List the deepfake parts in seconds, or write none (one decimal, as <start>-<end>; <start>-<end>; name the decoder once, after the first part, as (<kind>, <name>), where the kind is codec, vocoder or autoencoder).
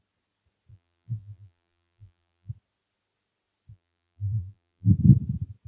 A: 0.7-2.5 (vocoder, BigVGAN v2); 3.7-4.9